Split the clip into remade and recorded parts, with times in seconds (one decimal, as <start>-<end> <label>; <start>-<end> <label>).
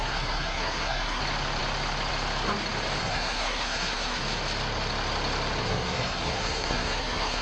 0.0-1.2 remade; 1.2-3.0 recorded; 3.0-4.2 remade; 4.2-5.6 recorded; 5.6-7.4 remade